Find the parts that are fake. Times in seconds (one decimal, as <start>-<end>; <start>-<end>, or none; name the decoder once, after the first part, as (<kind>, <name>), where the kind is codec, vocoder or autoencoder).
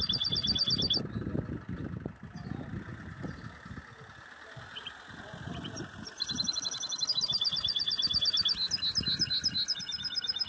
none